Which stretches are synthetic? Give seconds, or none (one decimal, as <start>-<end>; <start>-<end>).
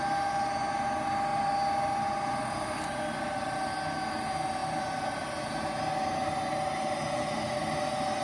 none